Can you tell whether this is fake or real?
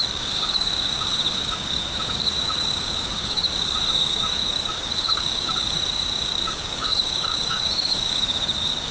fake